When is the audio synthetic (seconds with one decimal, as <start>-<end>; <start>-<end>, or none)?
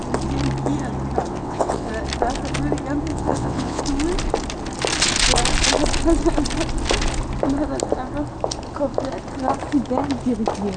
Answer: 1.3-1.9; 3.1-3.8